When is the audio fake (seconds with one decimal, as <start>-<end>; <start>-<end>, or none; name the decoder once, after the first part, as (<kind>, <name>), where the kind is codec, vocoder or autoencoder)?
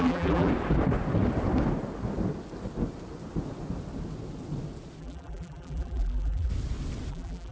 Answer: 0.0-0.5 (vocoder, BigVGAN v2); 5.0-6.5; 7.1-7.5